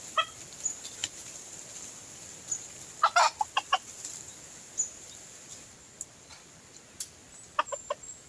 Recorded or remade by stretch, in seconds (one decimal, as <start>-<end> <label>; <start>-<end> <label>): 0.0-8.3 recorded